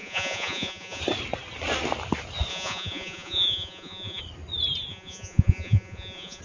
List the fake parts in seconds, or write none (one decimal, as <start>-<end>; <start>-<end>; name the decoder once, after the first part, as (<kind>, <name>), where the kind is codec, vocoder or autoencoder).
0.0-1.0 (vocoder, Vocos); 2.5-4.2; 4.9-6.4